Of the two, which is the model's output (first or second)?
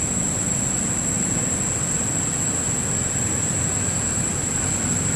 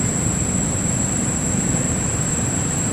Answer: second